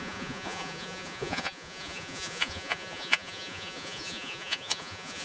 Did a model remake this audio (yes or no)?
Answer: yes